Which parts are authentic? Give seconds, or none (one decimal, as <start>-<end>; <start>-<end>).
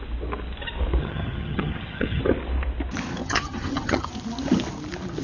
0.0-1.0; 2.2-3.2; 4.1-5.2